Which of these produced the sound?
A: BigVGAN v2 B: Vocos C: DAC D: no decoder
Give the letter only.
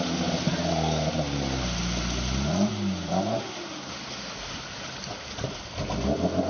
D